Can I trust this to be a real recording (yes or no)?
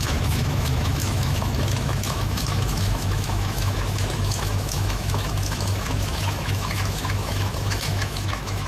no